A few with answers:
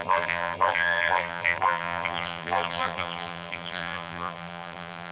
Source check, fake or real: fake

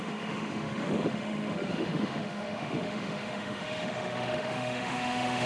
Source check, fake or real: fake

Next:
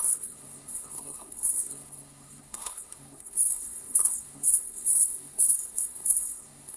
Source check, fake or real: fake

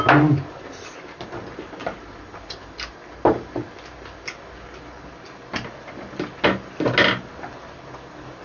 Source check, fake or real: real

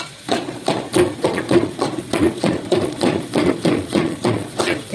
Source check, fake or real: fake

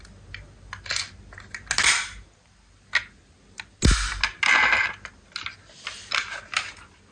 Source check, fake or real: real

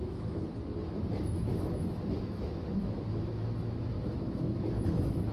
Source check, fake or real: fake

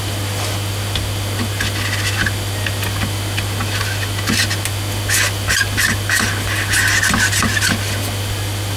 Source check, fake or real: real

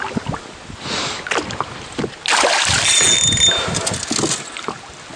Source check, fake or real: real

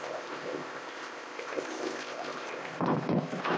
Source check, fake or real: fake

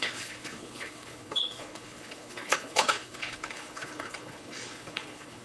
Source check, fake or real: fake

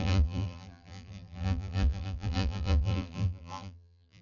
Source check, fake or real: fake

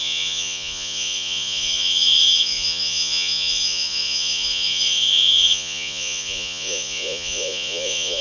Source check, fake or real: fake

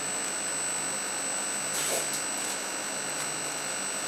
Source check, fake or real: real